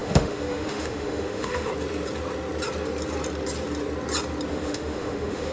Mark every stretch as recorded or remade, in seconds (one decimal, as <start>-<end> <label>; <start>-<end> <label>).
0.0-1.7 remade; 1.7-4.5 recorded; 4.5-5.5 remade